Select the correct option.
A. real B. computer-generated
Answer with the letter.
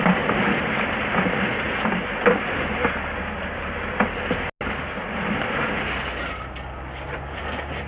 A